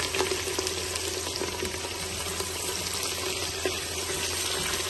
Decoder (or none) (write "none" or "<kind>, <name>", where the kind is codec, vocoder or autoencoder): none